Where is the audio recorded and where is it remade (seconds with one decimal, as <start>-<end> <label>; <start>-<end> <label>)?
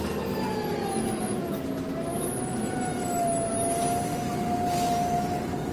0.0-5.7 recorded